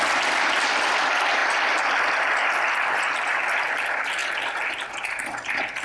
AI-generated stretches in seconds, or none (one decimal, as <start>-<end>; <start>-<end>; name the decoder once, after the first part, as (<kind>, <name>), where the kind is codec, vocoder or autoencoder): 0.0-1.4 (vocoder, BigVGAN v2); 2.7-4.2